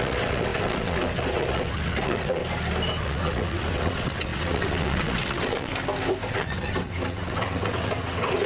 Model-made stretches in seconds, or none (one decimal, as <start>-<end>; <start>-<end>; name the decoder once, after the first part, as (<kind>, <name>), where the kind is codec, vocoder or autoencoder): 0.0-2.4 (vocoder, WaveNeXt); 3.0-5.7; 6.3-8.5